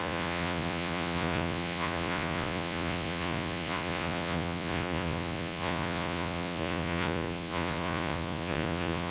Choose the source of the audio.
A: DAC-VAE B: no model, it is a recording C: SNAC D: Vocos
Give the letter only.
D